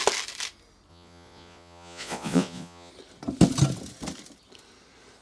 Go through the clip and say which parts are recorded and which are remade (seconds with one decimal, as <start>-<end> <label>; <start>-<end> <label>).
0.0-0.9 recorded; 0.9-2.9 remade; 2.9-5.2 recorded